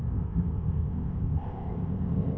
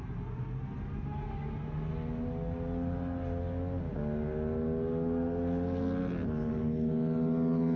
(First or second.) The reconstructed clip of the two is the first